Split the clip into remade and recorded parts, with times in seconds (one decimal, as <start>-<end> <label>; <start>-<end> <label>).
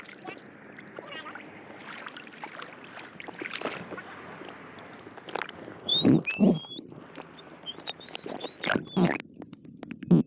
0.0-10.3 recorded